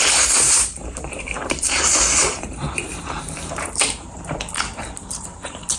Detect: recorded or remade remade